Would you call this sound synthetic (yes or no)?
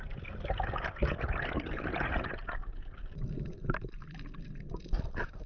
no